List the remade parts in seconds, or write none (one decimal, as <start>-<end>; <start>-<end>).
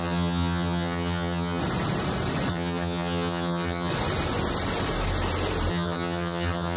0.0-1.6; 2.5-3.9; 5.7-6.8